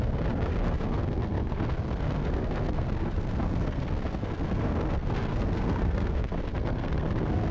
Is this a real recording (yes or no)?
no